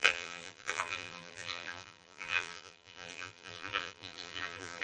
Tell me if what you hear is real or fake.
fake